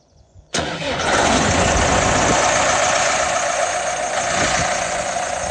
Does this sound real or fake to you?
fake